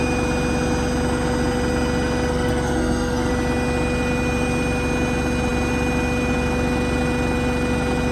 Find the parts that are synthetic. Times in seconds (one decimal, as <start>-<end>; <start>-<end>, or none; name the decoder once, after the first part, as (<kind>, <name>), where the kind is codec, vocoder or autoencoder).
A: 2.3-3.3 (codec, SNAC)